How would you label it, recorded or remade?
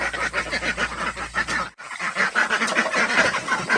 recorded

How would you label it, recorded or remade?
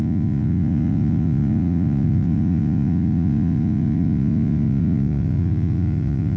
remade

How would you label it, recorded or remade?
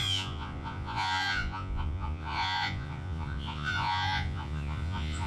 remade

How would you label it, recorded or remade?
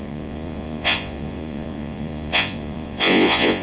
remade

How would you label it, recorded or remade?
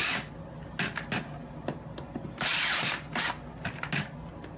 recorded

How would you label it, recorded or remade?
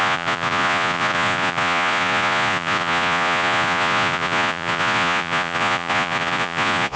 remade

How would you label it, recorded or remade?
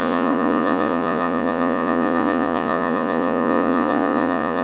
remade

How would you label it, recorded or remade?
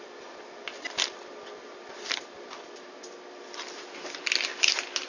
recorded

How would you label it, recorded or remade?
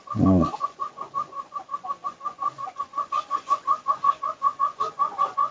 remade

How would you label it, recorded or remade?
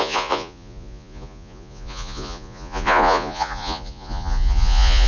remade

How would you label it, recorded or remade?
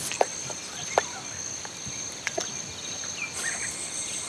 recorded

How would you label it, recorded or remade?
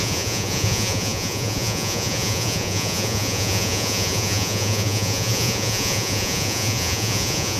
remade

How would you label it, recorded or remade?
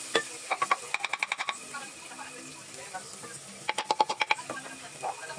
recorded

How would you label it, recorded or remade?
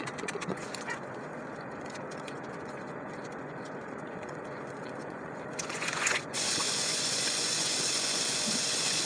remade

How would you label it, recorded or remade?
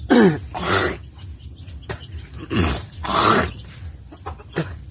recorded